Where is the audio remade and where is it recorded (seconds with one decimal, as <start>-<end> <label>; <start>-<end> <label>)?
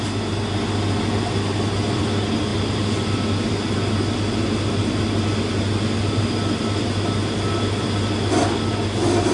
0.0-9.3 recorded